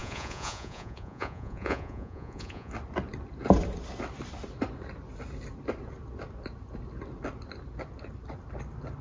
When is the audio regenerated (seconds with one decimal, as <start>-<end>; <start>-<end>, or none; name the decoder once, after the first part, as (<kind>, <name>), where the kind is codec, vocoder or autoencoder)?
0.0-2.7 (vocoder, Vocos)